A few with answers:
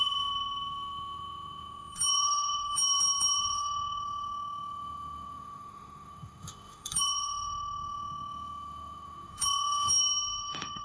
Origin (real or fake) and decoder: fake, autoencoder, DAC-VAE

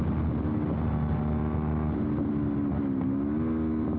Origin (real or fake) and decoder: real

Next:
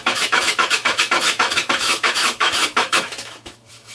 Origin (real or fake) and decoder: fake, autoencoder, DAC-VAE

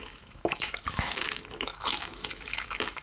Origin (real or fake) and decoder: fake, autoencoder, DAC-VAE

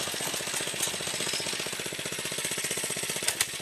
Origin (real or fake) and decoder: real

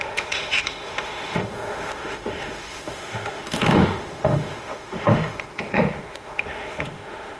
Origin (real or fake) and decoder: fake, autoencoder, DAC-VAE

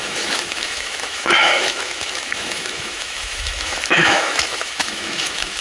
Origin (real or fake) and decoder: fake, autoencoder, DAC-VAE